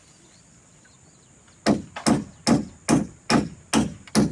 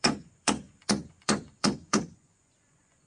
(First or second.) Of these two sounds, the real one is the first